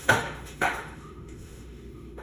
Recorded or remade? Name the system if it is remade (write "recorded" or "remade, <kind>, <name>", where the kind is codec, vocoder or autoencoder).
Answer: remade, autoencoder, DAC-VAE